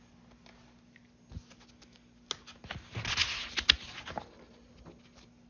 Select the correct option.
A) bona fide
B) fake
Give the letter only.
A